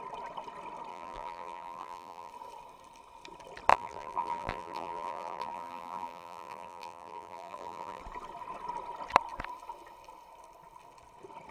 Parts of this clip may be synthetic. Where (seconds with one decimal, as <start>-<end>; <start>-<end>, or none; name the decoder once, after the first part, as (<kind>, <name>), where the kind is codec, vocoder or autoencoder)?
0.9-2.3 (vocoder, BigVGAN v2); 3.7-8.0